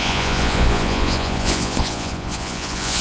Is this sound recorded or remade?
remade